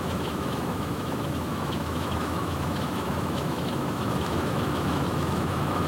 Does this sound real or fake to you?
fake